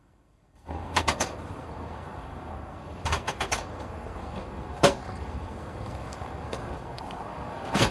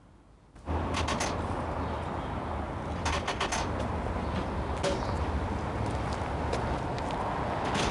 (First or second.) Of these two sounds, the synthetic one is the first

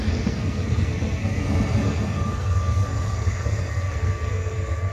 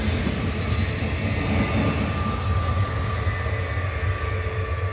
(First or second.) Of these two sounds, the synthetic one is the first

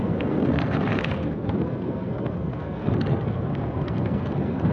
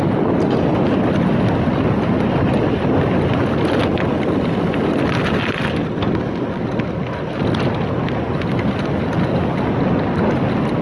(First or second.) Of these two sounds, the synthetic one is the first